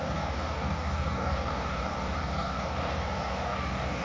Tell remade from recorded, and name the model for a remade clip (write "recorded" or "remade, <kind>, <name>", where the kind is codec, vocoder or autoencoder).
remade, codec, DAC